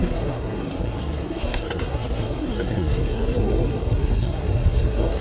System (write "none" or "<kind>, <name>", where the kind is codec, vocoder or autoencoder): codec, SNAC